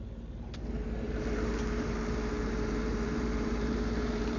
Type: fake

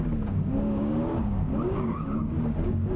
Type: fake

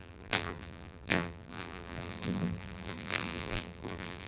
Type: fake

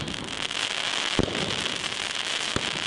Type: real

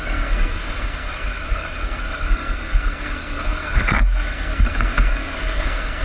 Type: fake